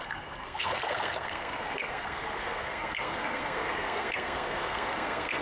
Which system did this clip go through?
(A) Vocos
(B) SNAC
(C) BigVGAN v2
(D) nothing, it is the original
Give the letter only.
B